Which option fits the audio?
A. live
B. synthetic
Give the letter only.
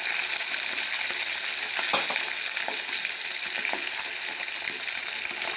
A